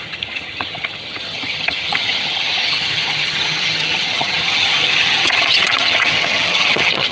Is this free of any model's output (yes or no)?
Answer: no